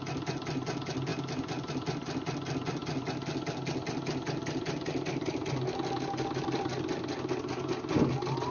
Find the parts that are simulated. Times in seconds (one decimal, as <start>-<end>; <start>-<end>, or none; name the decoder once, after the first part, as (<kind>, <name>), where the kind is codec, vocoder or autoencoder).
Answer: none